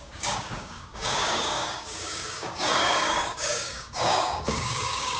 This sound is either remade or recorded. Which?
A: remade